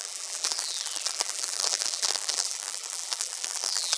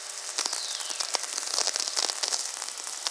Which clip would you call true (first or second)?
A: second